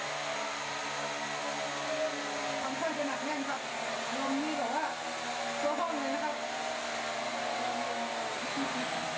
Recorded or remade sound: recorded